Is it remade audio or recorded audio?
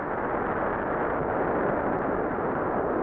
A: recorded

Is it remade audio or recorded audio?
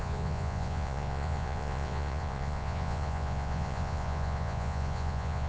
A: remade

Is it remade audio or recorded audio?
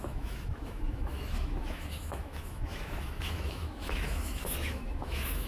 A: remade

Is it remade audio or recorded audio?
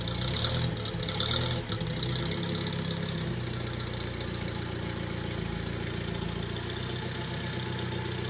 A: recorded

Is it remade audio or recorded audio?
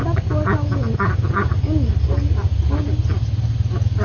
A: recorded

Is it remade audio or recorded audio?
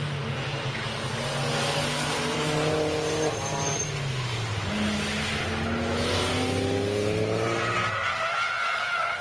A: recorded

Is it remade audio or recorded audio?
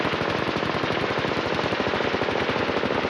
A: recorded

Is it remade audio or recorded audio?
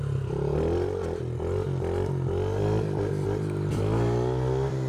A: recorded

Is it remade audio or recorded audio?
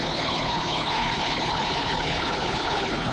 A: remade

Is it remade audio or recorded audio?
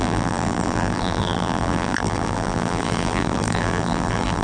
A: remade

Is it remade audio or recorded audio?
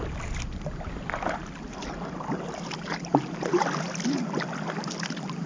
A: recorded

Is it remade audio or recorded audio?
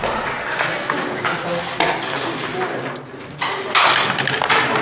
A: recorded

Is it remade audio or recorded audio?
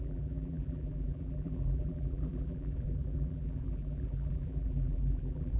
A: remade